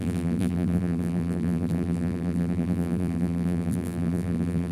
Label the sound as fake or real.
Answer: fake